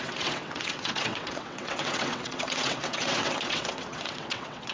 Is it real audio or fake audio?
fake